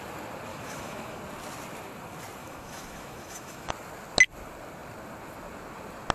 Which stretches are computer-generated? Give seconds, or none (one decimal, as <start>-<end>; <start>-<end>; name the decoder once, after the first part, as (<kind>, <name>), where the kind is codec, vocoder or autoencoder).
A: 0.5-1.2 (autoencoder, DAC-VAE); 2.4-3.7